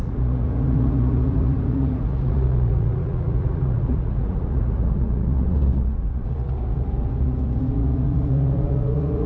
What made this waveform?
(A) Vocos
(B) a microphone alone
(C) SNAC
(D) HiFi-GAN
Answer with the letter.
A